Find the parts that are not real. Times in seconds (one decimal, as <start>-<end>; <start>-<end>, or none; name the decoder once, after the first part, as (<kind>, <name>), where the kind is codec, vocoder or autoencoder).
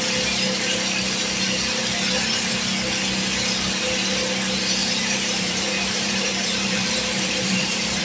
4.8-8.0 (vocoder, BigVGAN v2)